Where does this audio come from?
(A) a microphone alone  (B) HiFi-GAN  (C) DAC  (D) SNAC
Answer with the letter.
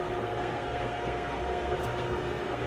D